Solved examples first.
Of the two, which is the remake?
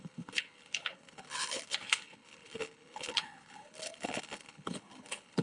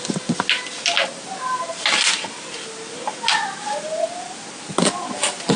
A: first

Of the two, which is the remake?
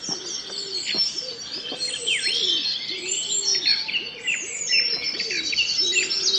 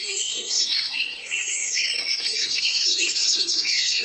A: second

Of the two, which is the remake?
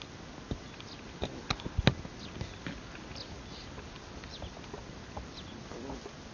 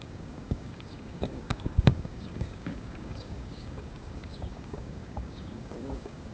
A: second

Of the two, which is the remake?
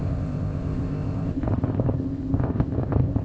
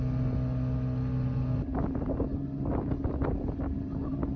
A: first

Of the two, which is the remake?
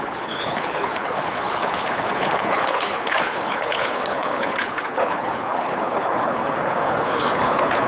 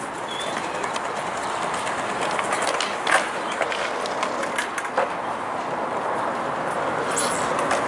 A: first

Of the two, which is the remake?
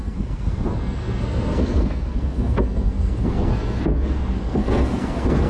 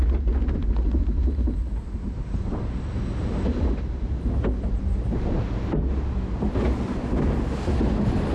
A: first